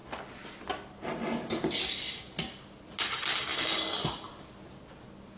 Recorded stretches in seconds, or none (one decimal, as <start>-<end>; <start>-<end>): 0.0-5.4